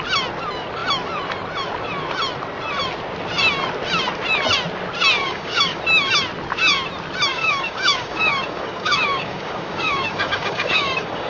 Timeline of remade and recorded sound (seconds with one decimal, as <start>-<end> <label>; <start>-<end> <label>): 0.0-5.2 recorded; 5.2-5.8 remade; 5.8-7.3 recorded; 7.3-11.3 remade